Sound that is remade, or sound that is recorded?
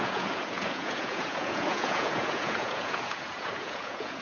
remade